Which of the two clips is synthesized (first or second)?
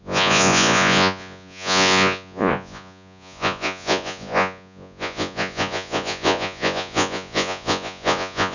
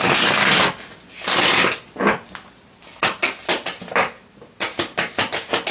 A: first